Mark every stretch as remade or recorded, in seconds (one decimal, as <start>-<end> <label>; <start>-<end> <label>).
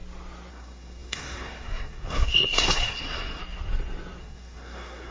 0.0-0.5 recorded; 0.5-3.4 remade; 3.4-4.2 recorded; 4.2-5.1 remade